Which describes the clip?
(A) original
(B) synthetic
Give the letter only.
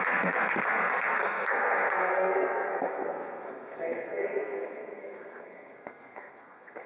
B